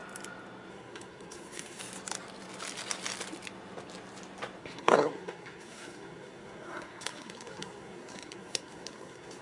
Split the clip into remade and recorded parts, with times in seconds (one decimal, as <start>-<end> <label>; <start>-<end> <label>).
0.0-0.7 recorded; 0.7-1.8 remade; 1.8-4.6 recorded; 4.6-9.4 remade